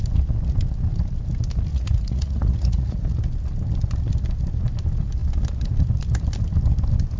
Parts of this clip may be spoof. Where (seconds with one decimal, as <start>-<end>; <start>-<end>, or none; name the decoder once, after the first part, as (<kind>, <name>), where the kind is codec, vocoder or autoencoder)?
1.7-3.0 (vocoder, Vocos)